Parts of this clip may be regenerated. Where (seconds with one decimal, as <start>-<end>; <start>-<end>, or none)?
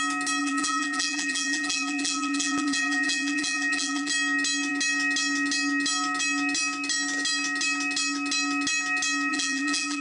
0.4-4.1; 9.3-10.0